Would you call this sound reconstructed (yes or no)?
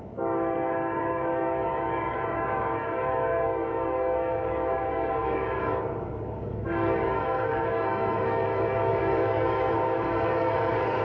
yes